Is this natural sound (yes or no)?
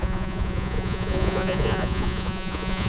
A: no